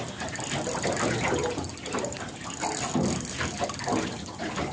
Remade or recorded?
recorded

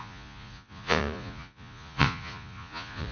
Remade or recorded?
remade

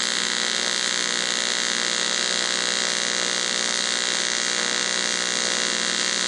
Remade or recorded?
recorded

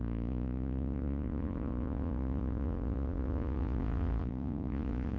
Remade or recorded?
remade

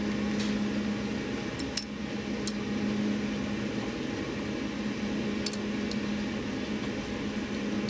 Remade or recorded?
recorded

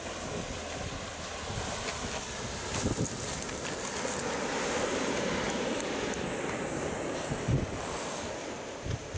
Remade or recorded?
recorded